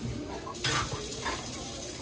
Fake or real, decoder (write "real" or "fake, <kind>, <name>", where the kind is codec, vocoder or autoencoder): real